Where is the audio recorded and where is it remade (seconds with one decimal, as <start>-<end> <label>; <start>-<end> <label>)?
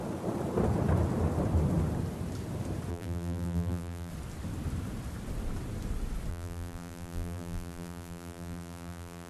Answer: 0.0-2.9 recorded; 2.9-4.1 remade; 4.1-6.3 recorded; 6.3-9.3 remade